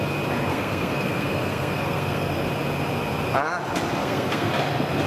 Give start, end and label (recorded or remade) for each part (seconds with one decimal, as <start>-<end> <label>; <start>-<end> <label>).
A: 0.0-0.5 recorded; 0.5-2.5 remade; 2.5-4.0 recorded; 4.0-4.5 remade; 4.5-5.1 recorded